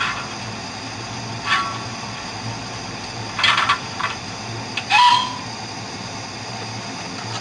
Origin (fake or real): real